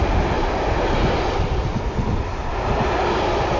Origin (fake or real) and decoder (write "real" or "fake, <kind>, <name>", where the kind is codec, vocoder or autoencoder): real